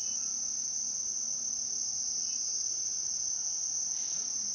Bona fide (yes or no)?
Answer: yes